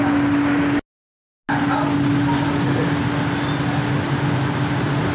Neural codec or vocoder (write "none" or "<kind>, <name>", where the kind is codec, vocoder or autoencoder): none